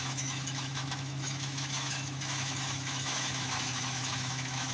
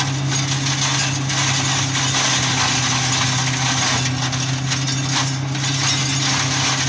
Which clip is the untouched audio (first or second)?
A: second